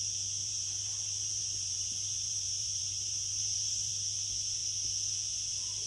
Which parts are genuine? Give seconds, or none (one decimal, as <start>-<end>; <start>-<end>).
0.0-0.4; 3.9-5.9